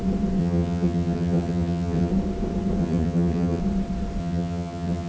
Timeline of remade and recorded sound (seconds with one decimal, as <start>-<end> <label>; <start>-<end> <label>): 0.0-0.4 recorded; 0.4-2.1 remade; 2.1-2.8 recorded; 2.8-3.6 remade; 3.6-4.2 recorded; 4.2-5.1 remade